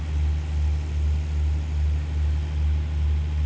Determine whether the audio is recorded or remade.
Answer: recorded